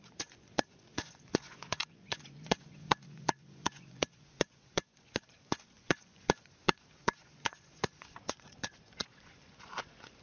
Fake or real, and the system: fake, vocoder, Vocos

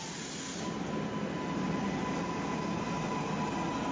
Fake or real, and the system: real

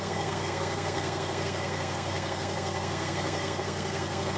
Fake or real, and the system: fake, codec, SNAC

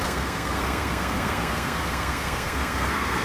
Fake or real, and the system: fake, codec, SNAC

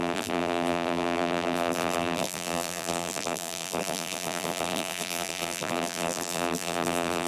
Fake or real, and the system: fake, vocoder, BigVGAN v2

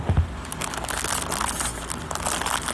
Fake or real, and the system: real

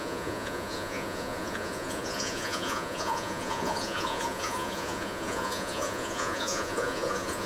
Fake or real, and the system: fake, vocoder, Vocos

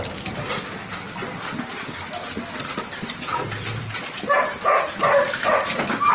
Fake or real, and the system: real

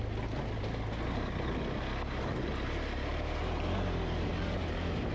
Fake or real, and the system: real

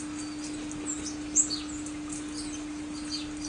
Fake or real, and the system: real